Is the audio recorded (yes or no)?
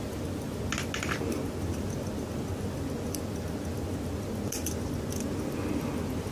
yes